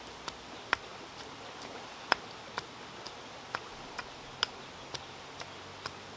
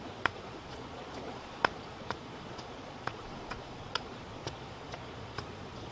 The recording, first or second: first